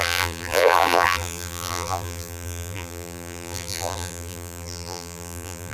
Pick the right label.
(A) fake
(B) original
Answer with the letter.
A